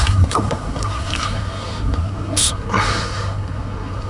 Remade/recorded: remade